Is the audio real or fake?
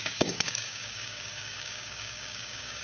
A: fake